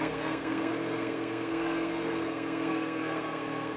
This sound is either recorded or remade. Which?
remade